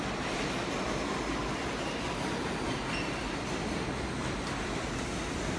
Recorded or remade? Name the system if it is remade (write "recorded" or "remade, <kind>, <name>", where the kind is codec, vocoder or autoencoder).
recorded